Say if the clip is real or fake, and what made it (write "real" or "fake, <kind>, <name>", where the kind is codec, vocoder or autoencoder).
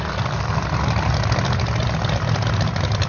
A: real